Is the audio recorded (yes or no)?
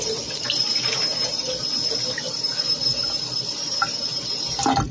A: yes